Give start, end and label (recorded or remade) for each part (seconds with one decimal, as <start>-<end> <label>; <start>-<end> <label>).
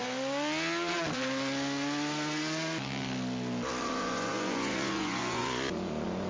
0.0-3.8 recorded; 3.8-6.3 remade